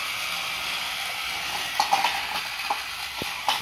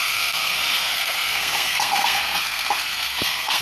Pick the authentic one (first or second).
first